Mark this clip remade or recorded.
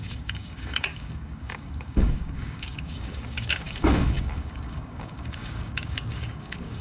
remade